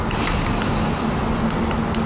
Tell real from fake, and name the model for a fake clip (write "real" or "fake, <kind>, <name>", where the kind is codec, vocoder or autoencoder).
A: real